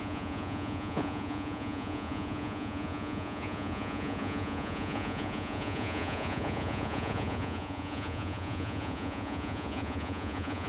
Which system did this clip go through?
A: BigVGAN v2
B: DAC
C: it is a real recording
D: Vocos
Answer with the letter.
D